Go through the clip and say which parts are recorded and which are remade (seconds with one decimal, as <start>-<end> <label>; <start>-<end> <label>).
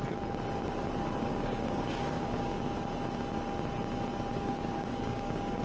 0.0-1.3 recorded; 1.3-2.6 remade; 2.6-4.3 recorded; 4.3-5.6 remade